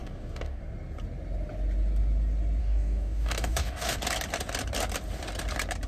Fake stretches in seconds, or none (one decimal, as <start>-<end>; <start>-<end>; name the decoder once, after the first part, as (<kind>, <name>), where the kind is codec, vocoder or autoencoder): 0.0-0.6 (codec, DAC); 2.6-4.0